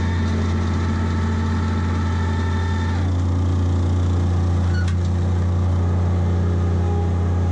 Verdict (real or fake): real